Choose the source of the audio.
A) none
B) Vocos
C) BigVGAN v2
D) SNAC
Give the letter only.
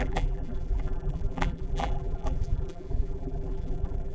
C